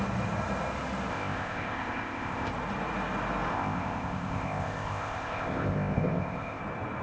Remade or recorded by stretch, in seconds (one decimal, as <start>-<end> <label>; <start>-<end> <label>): 0.0-1.1 recorded; 1.1-2.5 remade; 2.5-3.5 recorded; 3.5-6.6 remade; 6.6-7.0 recorded